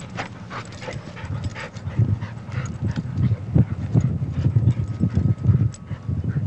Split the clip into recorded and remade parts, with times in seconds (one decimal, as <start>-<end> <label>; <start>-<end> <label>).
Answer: 0.0-6.5 recorded